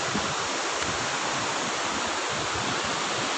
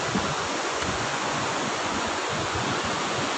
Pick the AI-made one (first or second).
second